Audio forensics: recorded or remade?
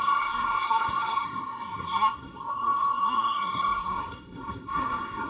remade